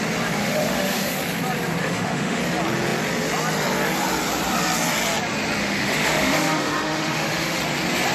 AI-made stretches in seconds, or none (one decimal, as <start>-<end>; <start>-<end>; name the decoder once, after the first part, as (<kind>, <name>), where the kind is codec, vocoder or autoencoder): 0.4-1.2 (autoencoder, DAC-VAE); 1.8-2.4; 5.6-7.6